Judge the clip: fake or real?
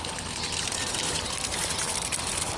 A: fake